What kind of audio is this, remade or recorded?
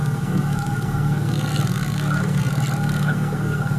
remade